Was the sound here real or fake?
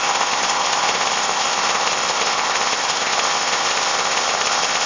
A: fake